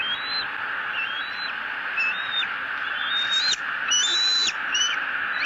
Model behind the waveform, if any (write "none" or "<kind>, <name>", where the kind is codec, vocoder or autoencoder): none